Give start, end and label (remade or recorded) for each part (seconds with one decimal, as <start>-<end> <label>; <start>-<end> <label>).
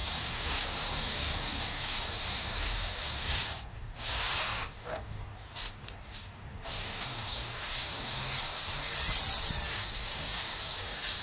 0.0-8.9 remade; 8.9-9.7 recorded; 9.7-11.2 remade